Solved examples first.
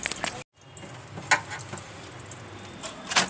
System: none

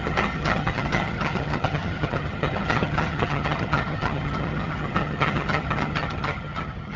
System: vocoder, HiFi-GAN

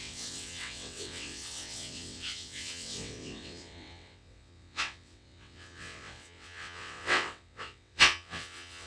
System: vocoder, WaveNeXt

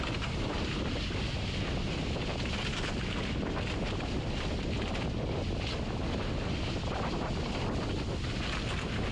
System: none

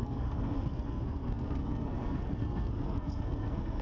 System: codec, SNAC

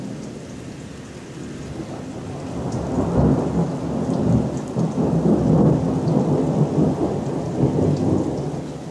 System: none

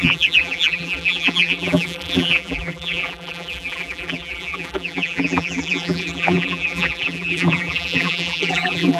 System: vocoder, BigVGAN v2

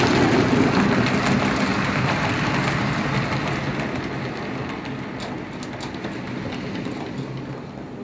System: none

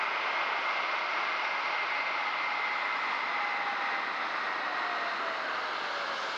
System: none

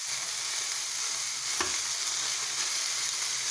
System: none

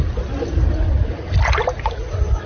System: none